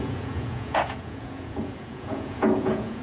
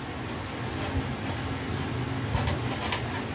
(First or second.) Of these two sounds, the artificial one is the first